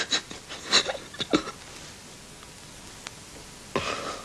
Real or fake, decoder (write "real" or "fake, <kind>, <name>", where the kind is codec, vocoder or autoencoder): real